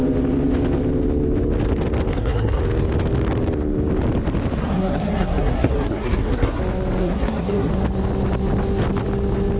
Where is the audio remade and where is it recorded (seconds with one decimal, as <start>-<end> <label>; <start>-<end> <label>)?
0.0-2.1 recorded; 2.1-2.6 remade; 2.6-4.6 recorded; 4.6-6.6 remade; 6.6-7.0 recorded; 7.0-7.7 remade; 7.7-9.6 recorded